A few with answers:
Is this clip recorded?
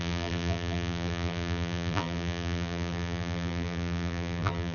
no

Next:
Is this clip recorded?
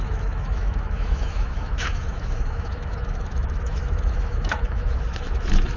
no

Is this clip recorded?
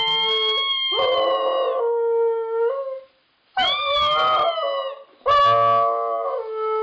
yes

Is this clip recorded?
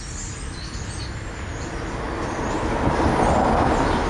yes